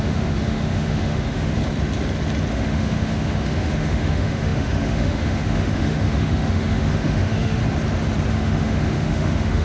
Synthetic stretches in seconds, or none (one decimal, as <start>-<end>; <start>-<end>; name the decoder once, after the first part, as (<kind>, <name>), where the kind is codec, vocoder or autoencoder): 0.0-1.6 (autoencoder, DAC-VAE); 2.5-7.6; 8.3-9.6